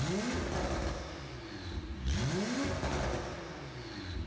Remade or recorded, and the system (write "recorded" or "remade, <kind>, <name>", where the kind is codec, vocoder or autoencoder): recorded